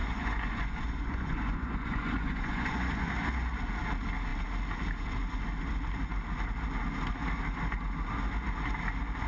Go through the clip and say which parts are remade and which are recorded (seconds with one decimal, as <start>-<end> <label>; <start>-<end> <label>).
0.0-3.1 remade; 3.1-9.3 recorded